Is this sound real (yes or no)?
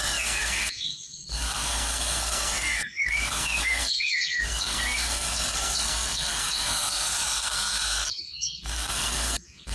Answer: no